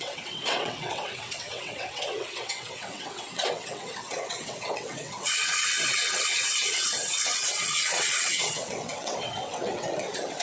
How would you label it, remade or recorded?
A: remade